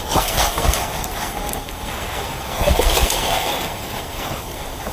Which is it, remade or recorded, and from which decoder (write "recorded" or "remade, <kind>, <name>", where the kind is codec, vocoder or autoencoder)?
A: remade, codec, SNAC